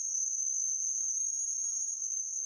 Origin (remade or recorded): recorded